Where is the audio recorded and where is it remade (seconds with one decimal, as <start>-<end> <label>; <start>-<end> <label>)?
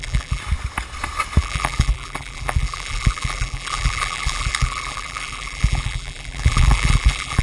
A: 0.0-0.4 remade; 0.4-1.4 recorded; 1.4-7.4 remade